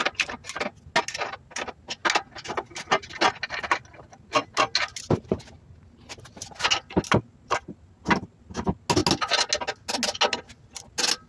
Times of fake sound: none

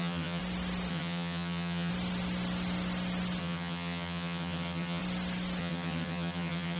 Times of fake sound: 0.0-0.4 (vocoder, HiFi-GAN); 0.9-1.9; 3.4-5.0; 5.6-6.8

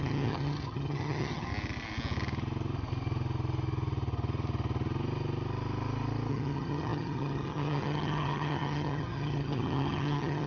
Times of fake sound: 0.0-1.5 (vocoder, HiFi-GAN); 6.3-10.5

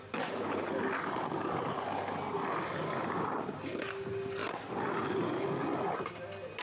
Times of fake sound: none

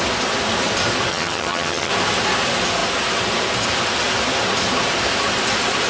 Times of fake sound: 1.1-1.9 (vocoder, HiFi-GAN)

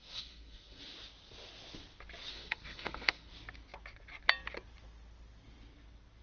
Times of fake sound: 0.0-0.8 (codec, SNAC); 2.3-3.3

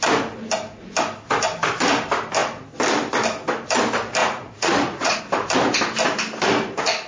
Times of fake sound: 4.2-5.2 (vocoder, Vocos)

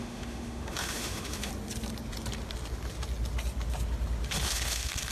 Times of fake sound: 0.0-1.5 (autoencoder, DAC-VAE); 4.3-5.1